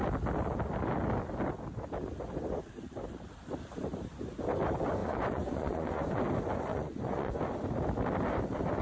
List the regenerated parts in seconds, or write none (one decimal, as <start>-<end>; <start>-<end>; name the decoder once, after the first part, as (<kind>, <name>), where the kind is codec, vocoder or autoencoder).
5.0-6.2 (vocoder, Vocos); 6.7-7.4